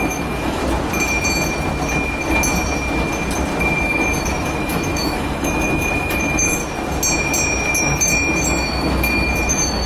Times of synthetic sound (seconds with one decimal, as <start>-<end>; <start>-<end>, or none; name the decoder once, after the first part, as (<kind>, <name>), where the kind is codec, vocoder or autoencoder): 0.0-0.6 (autoencoder, DAC-VAE); 3.8-6.6; 7.8-9.9